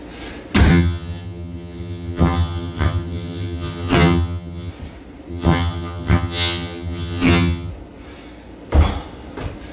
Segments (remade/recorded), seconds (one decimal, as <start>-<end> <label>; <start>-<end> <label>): 0.0-0.7 recorded; 0.7-4.7 remade; 4.7-5.3 recorded; 5.3-7.7 remade; 7.7-9.7 recorded